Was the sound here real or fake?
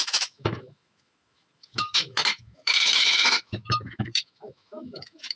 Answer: fake